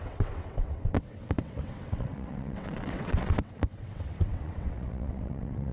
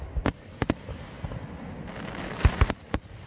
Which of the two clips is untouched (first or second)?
second